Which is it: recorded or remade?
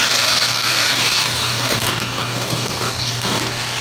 remade